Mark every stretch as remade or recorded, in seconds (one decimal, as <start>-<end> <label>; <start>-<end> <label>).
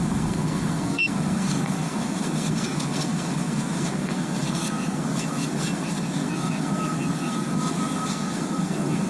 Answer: 0.0-9.1 remade